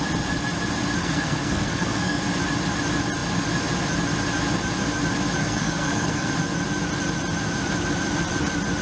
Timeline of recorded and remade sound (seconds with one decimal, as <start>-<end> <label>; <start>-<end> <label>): 0.0-1.0 recorded; 1.0-2.2 remade; 2.2-5.4 recorded; 5.4-6.3 remade; 6.3-8.8 recorded